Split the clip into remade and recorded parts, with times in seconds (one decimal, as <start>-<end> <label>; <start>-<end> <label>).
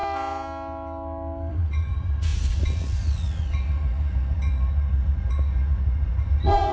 0.0-1.5 recorded; 1.5-6.7 remade